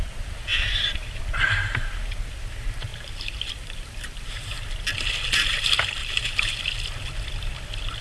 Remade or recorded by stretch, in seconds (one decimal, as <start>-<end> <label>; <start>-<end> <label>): 0.0-0.5 recorded; 0.5-1.2 remade; 1.2-2.9 recorded; 2.9-3.9 remade; 3.9-6.0 recorded; 6.0-6.6 remade; 6.6-8.0 recorded